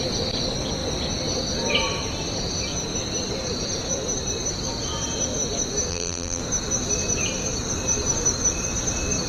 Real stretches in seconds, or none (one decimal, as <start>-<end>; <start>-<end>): 0.0-5.9; 6.4-9.3